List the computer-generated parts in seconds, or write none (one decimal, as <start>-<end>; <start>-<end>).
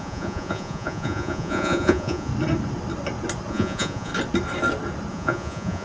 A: 0.0-2.3; 3.5-4.1; 5.1-5.8